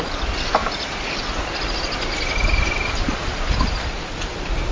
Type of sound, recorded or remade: recorded